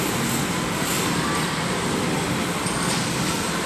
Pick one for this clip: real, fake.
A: real